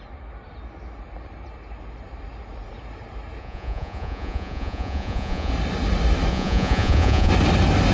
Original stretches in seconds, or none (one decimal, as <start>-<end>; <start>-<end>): 0.0-3.4; 5.5-6.3; 7.3-7.9